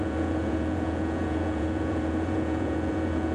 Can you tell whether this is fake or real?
fake